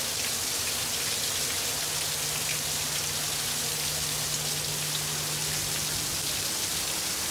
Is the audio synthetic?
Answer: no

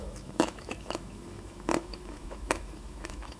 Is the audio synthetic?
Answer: yes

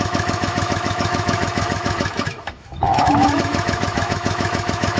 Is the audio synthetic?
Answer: yes